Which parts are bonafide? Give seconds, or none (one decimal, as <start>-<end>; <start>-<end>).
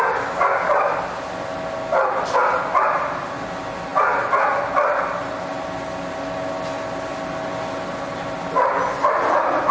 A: 0.0-9.7